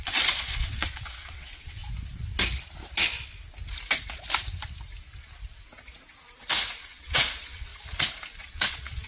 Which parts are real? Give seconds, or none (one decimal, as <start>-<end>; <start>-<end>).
1.8-6.8; 7.7-8.4